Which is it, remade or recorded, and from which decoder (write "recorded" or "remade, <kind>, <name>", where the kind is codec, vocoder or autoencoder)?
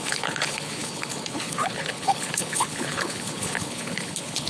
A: remade, codec, HILCodec